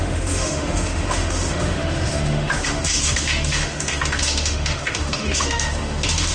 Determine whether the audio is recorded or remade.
remade